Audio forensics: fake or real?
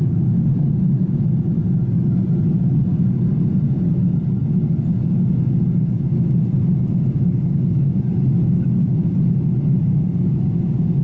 real